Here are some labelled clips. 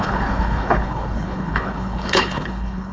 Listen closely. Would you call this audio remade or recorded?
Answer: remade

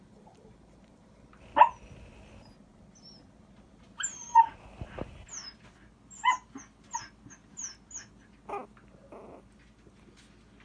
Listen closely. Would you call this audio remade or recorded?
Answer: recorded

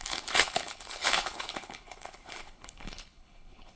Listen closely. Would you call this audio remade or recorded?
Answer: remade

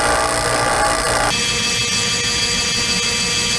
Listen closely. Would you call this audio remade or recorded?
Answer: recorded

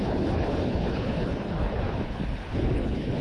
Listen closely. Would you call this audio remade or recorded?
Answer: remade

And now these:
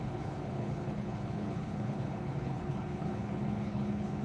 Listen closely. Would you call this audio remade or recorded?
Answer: remade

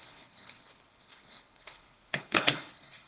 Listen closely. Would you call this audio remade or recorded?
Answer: remade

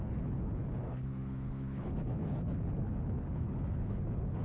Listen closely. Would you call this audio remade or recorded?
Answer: remade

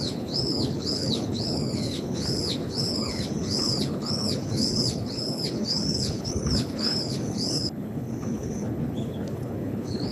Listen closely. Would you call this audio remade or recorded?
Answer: remade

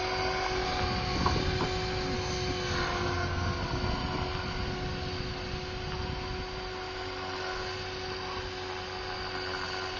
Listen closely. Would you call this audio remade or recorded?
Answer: recorded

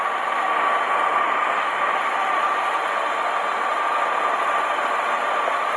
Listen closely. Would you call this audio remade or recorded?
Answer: recorded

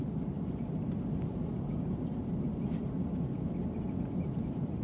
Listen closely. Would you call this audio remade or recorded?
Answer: recorded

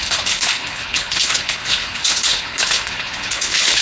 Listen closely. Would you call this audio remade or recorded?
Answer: remade